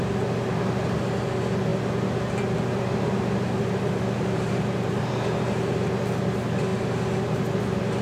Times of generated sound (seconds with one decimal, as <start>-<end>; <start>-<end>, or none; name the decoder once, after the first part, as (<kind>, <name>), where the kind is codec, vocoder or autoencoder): none